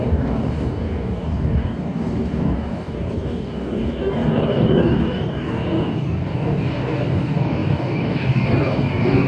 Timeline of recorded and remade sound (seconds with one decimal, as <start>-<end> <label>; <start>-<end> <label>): 0.0-9.3 remade

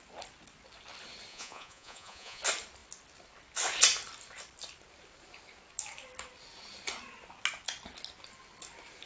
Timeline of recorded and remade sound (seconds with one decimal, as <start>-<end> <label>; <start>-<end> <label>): 0.0-1.3 recorded; 1.3-2.4 remade; 2.4-9.1 recorded

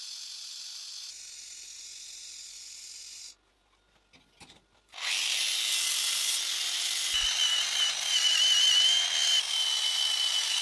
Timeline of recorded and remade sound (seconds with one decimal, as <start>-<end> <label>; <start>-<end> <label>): 0.0-10.6 recorded